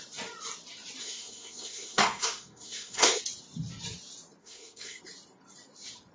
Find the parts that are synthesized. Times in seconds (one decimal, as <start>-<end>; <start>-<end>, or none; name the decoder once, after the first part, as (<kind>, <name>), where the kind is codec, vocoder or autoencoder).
1.0-3.2 (codec, SNAC); 4.4-5.0